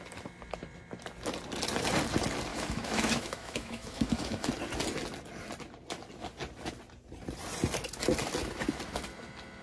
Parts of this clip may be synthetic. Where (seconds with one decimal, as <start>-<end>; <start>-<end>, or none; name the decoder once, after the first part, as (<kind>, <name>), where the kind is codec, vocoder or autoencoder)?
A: 2.5-4.5 (autoencoder, DAC-VAE)